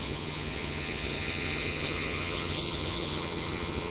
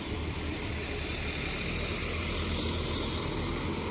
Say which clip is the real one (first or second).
second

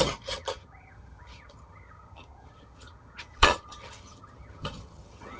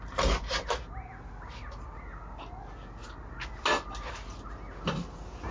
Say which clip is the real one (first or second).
second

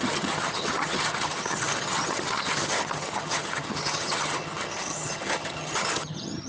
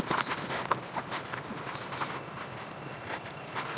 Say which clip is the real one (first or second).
second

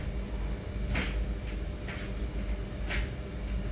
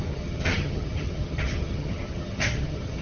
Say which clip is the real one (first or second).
first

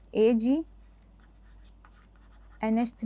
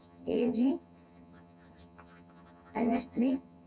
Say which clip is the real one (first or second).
first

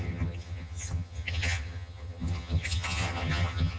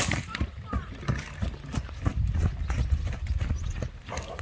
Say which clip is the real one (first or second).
second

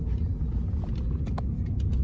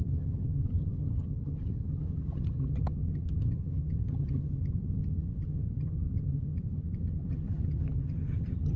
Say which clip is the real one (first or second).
first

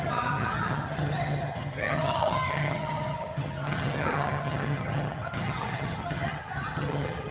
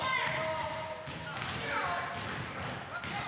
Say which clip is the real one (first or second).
second